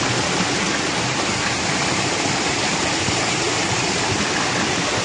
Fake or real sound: real